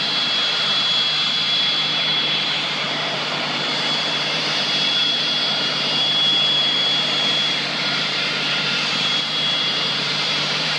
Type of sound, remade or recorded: remade